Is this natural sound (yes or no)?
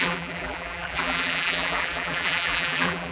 no